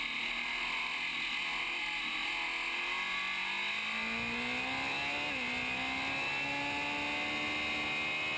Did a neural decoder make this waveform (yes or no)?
no